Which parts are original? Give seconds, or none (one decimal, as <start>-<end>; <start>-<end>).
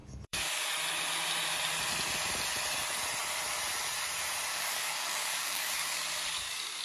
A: 0.7-4.5